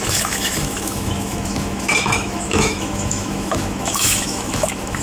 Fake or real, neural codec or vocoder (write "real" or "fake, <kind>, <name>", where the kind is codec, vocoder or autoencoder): fake, autoencoder, DAC-VAE